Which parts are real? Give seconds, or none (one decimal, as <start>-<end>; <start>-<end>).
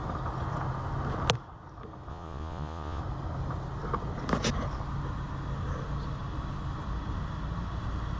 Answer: 0.0-2.1; 3.0-8.2